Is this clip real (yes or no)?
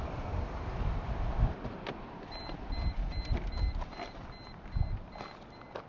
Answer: yes